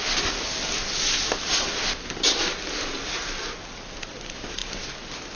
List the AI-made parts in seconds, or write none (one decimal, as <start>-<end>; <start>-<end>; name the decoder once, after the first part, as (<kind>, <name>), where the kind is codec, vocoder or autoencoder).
none